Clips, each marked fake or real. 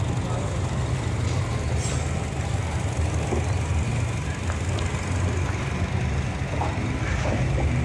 real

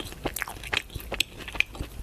real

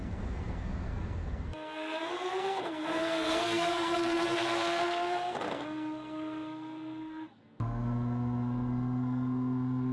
fake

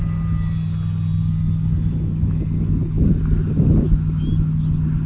real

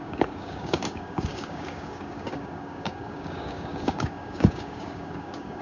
fake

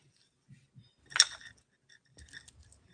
real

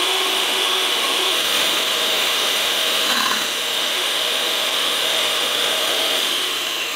fake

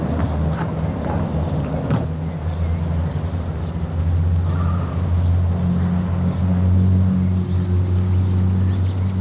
real